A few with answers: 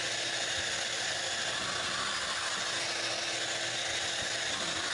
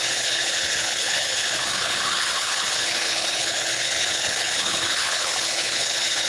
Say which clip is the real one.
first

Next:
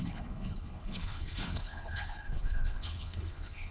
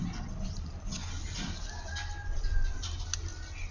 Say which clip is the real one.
second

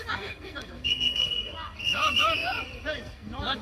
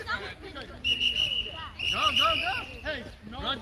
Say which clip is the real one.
second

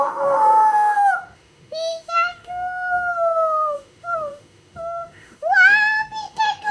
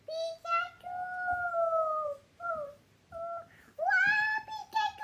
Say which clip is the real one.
second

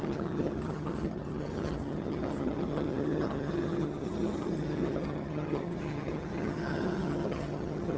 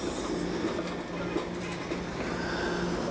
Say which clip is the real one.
second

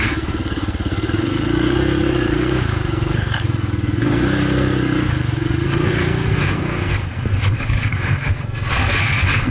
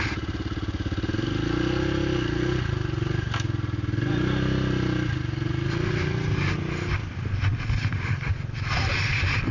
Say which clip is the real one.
second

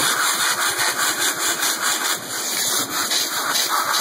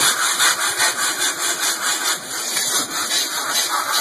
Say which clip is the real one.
first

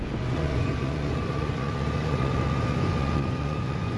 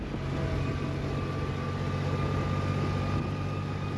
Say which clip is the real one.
second